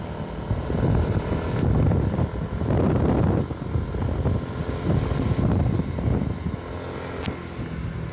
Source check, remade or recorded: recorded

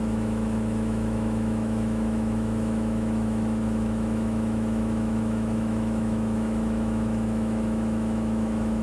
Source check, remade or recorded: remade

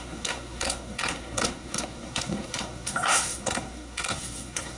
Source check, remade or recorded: remade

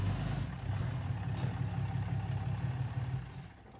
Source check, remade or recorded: recorded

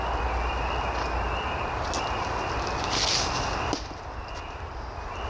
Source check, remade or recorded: recorded